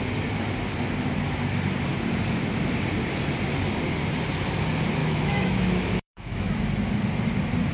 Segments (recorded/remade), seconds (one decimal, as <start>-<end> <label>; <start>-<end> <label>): 0.0-5.0 recorded; 5.0-6.5 remade; 6.5-7.7 recorded